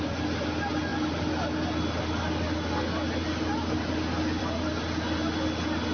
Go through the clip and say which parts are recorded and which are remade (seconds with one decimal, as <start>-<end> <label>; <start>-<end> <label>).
0.0-5.9 recorded